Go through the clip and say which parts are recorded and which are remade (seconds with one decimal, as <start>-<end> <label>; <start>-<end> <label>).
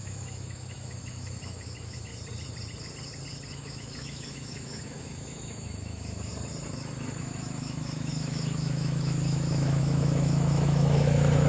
0.0-2.1 remade; 2.1-3.5 recorded; 3.5-6.3 remade; 6.3-7.2 recorded; 7.2-11.5 remade